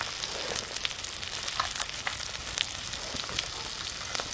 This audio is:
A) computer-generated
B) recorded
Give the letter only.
B